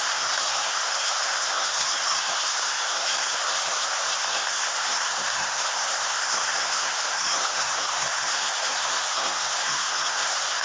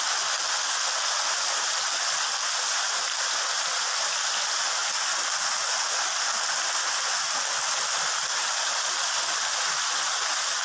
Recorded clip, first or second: second